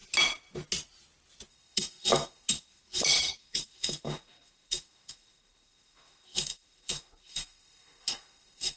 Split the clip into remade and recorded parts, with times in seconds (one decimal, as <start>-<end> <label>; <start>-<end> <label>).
0.0-1.5 recorded; 1.5-8.8 remade